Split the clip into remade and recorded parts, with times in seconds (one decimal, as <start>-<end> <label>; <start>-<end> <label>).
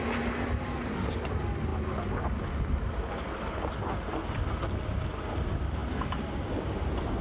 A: 0.0-7.2 recorded